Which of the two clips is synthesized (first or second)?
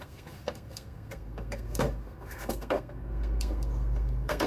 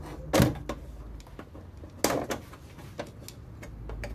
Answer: first